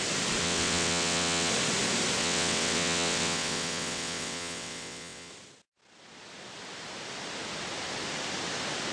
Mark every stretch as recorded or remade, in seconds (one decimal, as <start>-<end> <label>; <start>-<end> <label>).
0.0-0.4 recorded; 0.4-1.5 remade; 1.5-2.2 recorded; 2.2-5.3 remade; 5.3-8.9 recorded